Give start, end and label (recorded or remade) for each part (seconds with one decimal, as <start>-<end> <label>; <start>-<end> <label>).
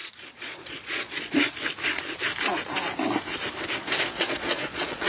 0.0-1.3 remade; 1.3-3.8 recorded; 3.8-5.1 remade